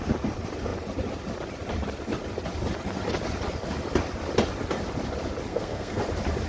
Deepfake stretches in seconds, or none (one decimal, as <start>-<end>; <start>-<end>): 5.5-6.0